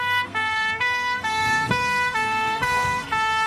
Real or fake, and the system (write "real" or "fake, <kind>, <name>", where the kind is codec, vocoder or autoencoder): fake, codec, SNAC